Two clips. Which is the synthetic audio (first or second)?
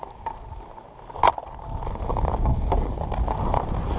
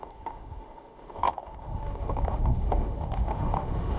second